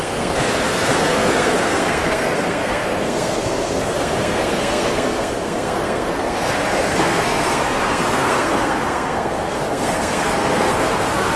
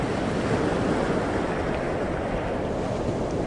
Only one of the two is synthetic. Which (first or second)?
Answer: first